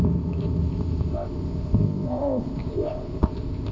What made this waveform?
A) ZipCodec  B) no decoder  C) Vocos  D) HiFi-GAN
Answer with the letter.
A